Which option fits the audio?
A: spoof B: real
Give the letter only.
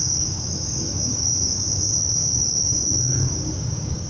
A